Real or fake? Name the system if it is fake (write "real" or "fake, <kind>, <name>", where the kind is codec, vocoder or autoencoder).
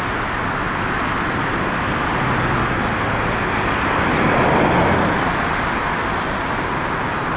real